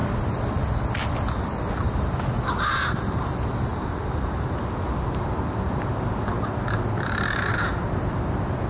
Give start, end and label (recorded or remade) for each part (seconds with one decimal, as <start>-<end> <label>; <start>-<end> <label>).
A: 0.0-8.7 recorded